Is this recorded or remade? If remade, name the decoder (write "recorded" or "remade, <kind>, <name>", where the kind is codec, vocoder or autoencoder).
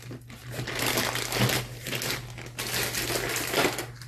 recorded